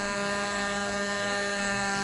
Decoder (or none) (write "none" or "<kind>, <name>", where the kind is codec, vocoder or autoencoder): codec, SNAC